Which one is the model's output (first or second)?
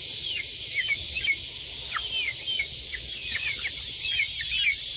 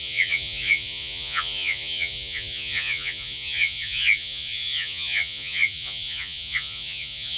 second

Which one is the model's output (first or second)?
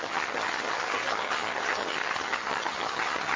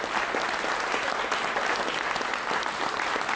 first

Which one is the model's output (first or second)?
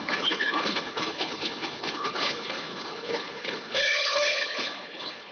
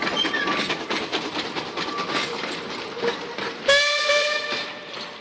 first